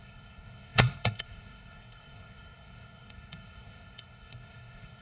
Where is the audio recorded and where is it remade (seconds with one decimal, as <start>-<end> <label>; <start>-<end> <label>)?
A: 0.0-5.0 remade